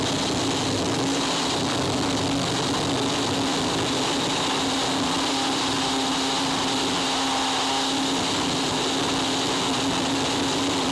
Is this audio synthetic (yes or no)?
no